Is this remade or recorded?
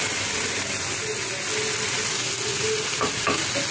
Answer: recorded